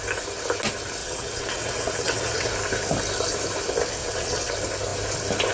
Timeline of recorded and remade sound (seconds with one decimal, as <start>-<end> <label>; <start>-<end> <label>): 0.0-1.0 recorded; 1.0-2.5 remade; 2.5-4.0 recorded; 4.0-4.5 remade; 4.5-5.5 recorded